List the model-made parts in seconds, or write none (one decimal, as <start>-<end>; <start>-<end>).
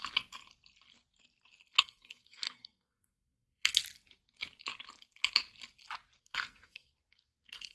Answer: 1.8-3.8; 6.2-7.7